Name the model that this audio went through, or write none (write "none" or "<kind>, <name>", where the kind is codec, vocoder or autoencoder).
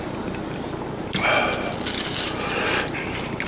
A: none